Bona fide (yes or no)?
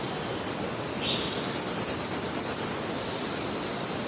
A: yes